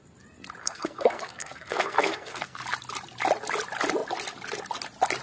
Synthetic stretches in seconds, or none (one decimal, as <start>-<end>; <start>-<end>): 0.6-2.6